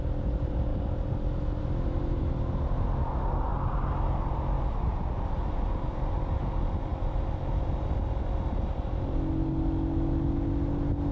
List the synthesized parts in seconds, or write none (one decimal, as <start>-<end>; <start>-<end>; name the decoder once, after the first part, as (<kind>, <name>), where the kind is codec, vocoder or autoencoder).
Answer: 6.9-7.9 (vocoder, BigVGAN v2)